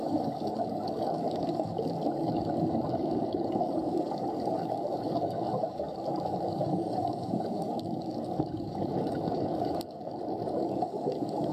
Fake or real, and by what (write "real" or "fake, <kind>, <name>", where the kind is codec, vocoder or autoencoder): fake, codec, DAC